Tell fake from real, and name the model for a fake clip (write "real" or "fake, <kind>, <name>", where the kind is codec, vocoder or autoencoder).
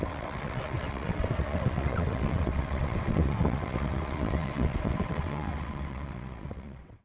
fake, vocoder, WaveNeXt